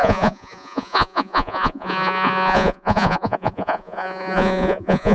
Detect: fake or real fake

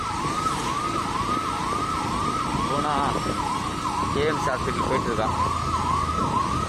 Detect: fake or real real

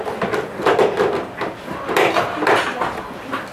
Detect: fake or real real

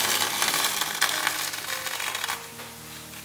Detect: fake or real real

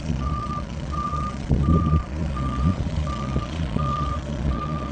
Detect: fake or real fake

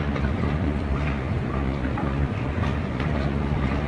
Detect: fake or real fake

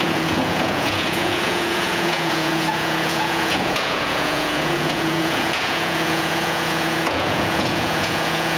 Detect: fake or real fake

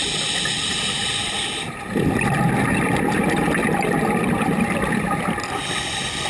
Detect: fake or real real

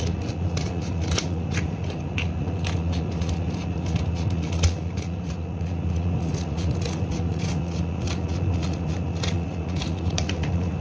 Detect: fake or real fake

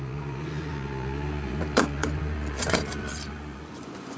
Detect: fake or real fake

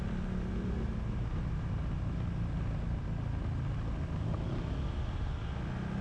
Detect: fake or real real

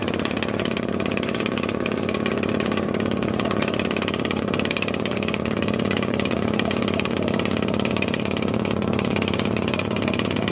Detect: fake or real fake